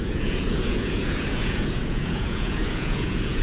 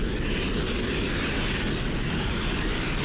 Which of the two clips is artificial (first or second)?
first